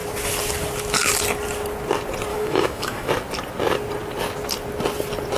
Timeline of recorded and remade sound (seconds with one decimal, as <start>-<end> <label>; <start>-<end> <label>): 0.0-2.3 recorded; 2.3-3.1 remade; 3.1-5.4 recorded